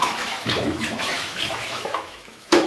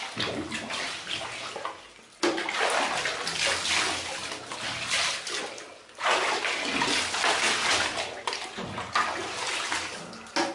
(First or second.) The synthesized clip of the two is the first